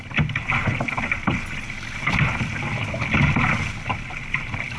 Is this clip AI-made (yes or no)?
no